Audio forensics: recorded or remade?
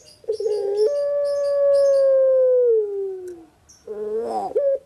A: recorded